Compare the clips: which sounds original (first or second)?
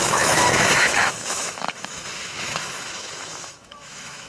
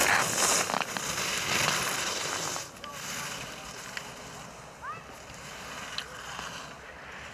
second